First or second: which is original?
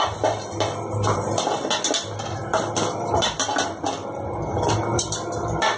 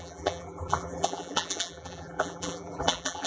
first